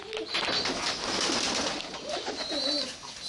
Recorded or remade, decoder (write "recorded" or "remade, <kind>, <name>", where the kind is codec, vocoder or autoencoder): recorded